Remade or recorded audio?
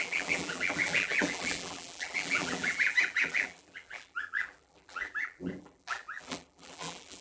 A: remade